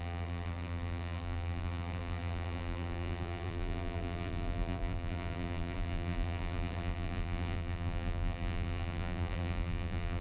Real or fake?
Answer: fake